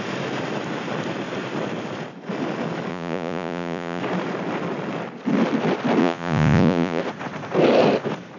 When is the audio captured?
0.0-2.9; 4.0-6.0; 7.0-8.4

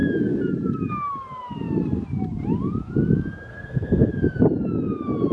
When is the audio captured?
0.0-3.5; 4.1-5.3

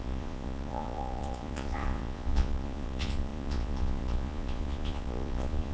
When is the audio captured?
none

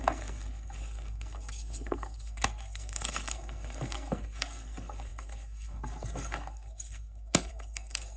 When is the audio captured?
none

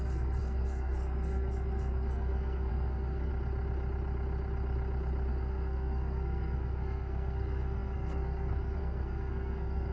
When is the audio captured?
3.3-5.3

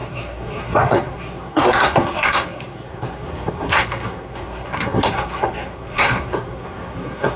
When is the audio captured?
none